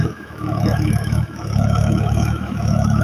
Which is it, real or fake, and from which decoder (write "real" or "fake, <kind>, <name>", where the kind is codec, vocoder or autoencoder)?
fake, autoencoder, DAC-VAE